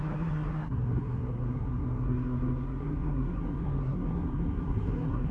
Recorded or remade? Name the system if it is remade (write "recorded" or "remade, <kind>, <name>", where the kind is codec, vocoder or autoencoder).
remade, codec, SNAC